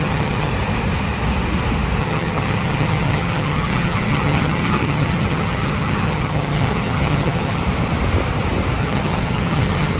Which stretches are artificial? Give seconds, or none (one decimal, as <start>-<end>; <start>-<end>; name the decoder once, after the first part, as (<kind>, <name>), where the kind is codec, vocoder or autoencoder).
0.0-0.5 (vocoder, HiFi-GAN); 2.0-7.6; 8.8-10.0